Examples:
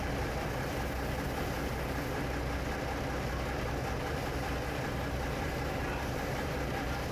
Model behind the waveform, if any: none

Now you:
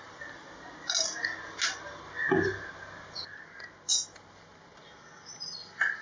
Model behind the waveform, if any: none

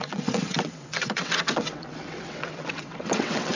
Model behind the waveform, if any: vocoder, WaveNeXt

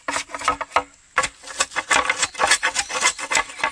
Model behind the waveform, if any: none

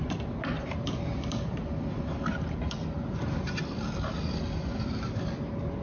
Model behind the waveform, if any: none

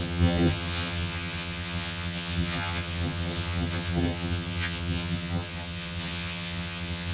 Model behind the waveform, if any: vocoder, HiFi-GAN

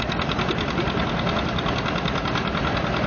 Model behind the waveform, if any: none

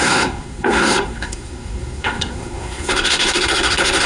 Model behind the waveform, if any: codec, SNAC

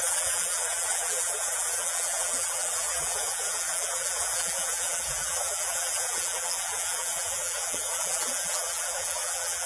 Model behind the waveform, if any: vocoder, BigVGAN v2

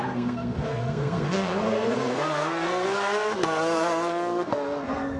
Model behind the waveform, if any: codec, SNAC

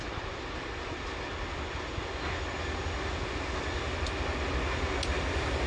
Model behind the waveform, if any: none